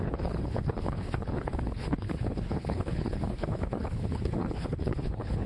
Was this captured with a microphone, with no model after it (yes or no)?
no